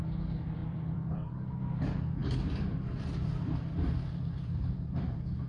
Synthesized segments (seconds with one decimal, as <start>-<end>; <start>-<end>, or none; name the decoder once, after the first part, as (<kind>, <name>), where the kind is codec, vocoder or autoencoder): 0.6-1.3 (vocoder, BigVGAN v2); 2.2-5.5

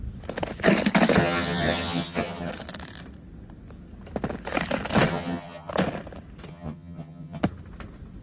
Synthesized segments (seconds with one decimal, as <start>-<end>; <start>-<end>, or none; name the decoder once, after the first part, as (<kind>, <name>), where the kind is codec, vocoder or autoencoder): 1.2-2.5 (vocoder, HiFi-GAN); 5.1-5.7; 6.5-7.4